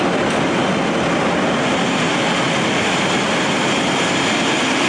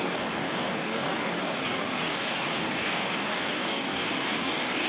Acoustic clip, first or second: first